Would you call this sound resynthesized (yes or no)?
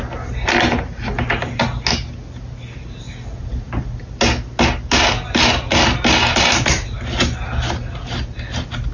no